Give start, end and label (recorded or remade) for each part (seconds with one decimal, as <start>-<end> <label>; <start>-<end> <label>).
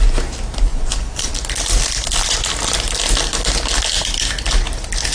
0.0-0.7 recorded; 0.7-1.3 remade; 1.3-5.1 recorded